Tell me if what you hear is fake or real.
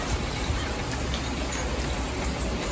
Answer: real